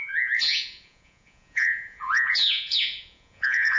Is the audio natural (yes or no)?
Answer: no